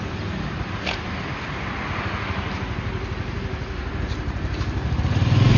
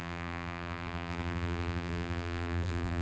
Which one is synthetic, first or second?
second